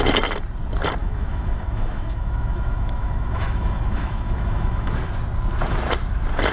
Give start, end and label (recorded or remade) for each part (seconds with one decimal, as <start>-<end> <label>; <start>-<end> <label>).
0.0-1.0 recorded; 1.0-4.9 remade; 4.9-6.5 recorded